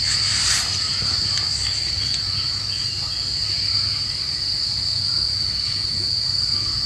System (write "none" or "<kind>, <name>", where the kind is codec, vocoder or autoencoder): none